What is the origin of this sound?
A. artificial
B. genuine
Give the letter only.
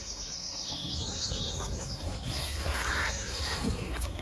A